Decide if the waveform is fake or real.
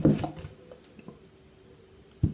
real